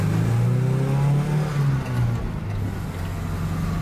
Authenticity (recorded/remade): recorded